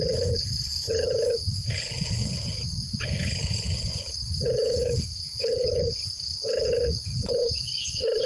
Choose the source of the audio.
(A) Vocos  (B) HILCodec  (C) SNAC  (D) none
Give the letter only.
B